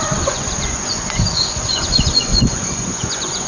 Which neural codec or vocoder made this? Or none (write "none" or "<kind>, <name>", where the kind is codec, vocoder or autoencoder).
vocoder, Vocos